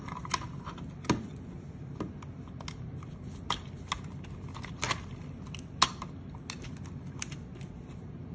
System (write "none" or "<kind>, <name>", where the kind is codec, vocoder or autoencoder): none